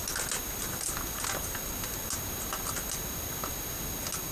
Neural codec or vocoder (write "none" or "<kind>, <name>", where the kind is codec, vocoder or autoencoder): none